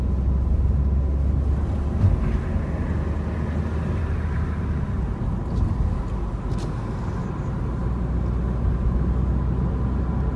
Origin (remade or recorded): recorded